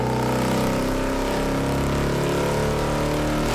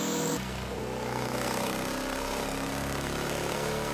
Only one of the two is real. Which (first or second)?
first